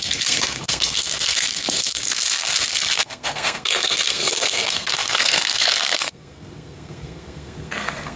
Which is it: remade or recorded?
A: remade